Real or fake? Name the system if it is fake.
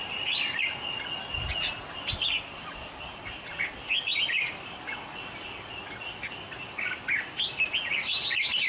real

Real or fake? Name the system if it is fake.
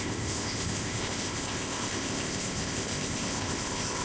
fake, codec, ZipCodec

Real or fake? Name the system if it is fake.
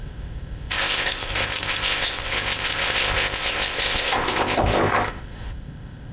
fake, codec, ZipCodec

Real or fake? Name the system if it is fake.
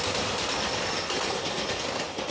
real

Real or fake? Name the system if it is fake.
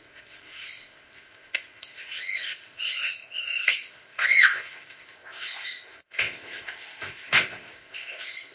fake, codec, ZipCodec